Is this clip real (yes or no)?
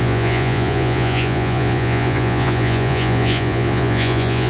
no